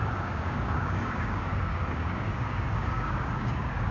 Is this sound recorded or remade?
remade